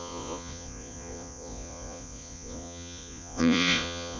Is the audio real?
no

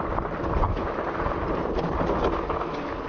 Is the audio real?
yes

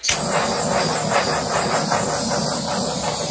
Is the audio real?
yes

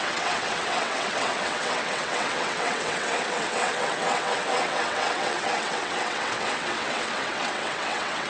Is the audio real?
no